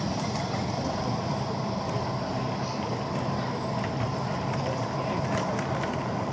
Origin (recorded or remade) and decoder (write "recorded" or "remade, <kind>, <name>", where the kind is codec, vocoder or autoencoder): recorded